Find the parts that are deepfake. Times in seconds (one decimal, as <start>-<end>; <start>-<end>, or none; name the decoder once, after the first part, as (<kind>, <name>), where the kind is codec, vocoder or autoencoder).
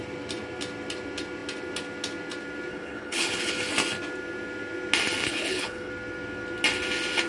2.7-3.7 (codec, HILCodec); 5.2-5.9